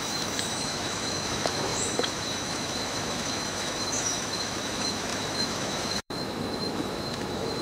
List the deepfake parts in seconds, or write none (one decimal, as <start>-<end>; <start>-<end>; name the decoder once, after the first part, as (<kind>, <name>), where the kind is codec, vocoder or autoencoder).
0.0-7.6 (autoencoder, DAC-VAE)